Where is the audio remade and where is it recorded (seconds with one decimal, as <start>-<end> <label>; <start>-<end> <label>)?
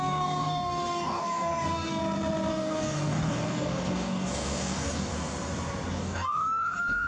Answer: 0.0-2.0 remade; 2.0-2.5 recorded; 2.5-5.1 remade; 5.1-5.9 recorded; 5.9-7.1 remade